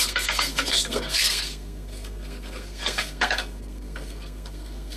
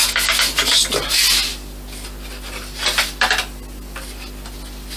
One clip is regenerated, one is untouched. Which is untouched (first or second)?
second